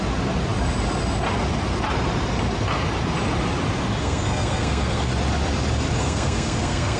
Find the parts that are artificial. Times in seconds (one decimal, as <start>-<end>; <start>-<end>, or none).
4.0-5.1; 6.0-7.0